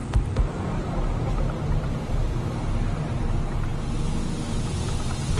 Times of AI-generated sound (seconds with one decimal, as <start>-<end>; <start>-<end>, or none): 0.0-3.2